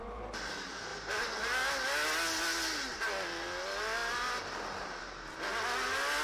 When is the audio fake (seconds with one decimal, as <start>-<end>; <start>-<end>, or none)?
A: 0.9-1.7